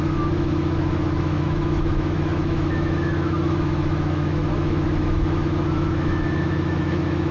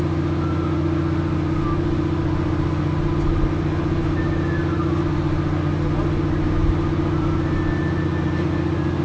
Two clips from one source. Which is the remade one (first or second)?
first